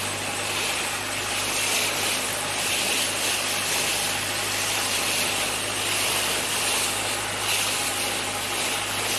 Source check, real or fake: real